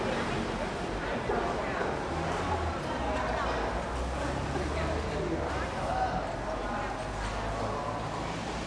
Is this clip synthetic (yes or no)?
no